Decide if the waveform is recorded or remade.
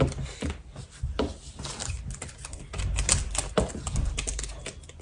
recorded